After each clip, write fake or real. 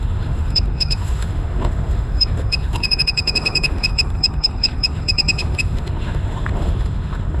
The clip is fake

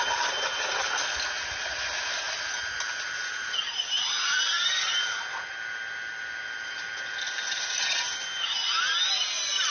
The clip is real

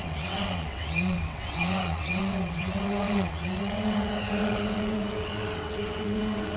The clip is fake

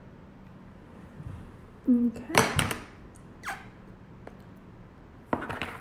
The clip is fake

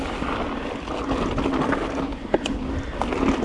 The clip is real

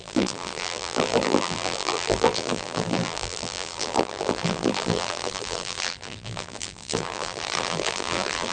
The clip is fake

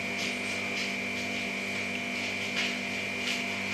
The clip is real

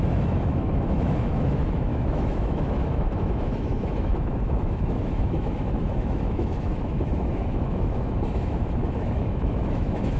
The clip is fake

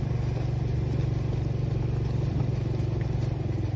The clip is real